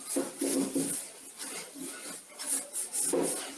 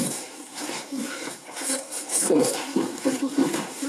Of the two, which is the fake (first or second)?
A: second